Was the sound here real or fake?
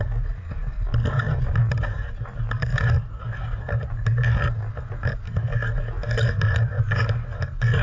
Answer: real